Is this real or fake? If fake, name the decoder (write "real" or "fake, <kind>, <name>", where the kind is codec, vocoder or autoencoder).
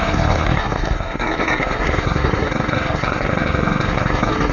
fake, codec, SNAC